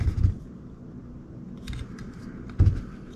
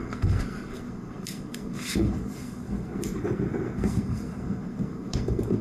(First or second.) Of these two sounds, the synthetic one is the second